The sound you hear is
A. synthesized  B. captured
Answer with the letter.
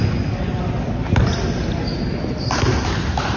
B